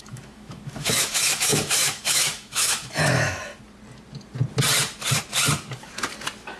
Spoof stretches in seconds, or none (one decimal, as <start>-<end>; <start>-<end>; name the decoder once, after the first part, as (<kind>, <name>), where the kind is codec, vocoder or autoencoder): 0.0-3.5 (autoencoder, DAC-VAE)